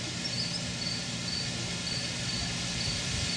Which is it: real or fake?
real